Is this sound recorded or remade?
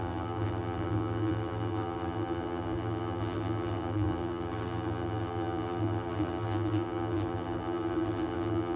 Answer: remade